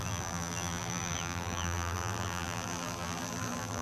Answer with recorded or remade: remade